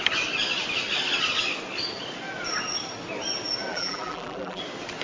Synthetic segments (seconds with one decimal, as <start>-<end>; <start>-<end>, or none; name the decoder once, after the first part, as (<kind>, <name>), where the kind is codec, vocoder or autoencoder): 3.7-4.6 (vocoder, BigVGAN v2)